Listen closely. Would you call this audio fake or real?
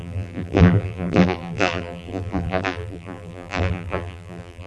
fake